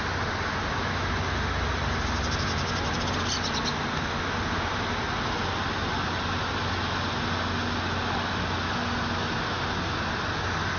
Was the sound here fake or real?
real